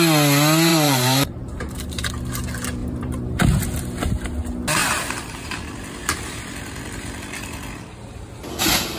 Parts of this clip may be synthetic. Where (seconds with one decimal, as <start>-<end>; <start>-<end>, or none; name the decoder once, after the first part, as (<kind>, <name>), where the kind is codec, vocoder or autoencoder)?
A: 0.7-2.1 (vocoder, BigVGAN v2); 2.8-3.8; 4.8-5.5

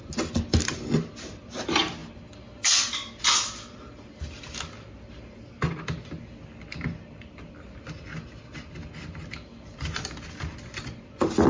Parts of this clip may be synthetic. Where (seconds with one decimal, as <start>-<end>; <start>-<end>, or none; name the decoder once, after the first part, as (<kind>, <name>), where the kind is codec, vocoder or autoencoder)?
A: none